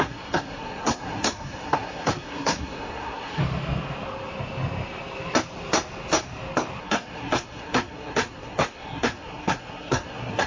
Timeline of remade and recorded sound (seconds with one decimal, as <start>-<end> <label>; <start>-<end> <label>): 0.0-3.4 remade; 3.4-6.8 recorded; 6.8-10.5 remade